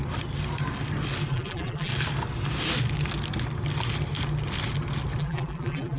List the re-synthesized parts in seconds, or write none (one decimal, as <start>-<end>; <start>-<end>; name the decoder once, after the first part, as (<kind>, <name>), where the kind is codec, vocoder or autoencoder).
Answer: 1.3-1.9 (vocoder, BigVGAN v2); 5.2-6.0